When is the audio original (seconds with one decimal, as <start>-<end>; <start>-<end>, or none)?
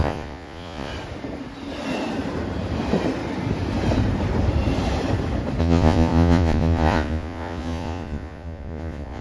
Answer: 0.9-5.6